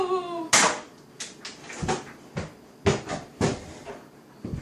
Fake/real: real